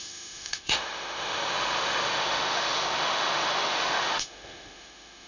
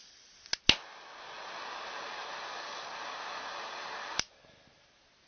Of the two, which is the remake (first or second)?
first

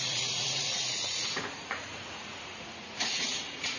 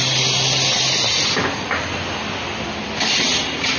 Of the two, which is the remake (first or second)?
first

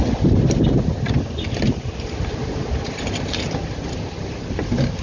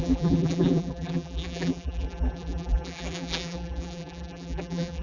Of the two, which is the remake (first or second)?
second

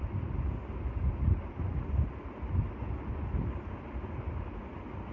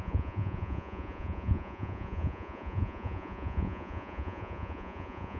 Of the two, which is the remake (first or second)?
second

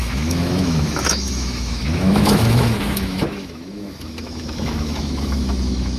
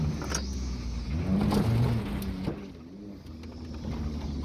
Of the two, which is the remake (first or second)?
first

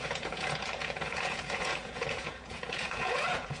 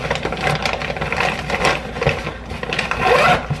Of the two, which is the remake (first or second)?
first